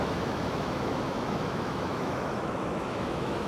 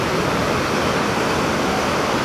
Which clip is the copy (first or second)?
first